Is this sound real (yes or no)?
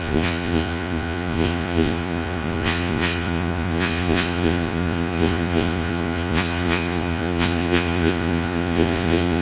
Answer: no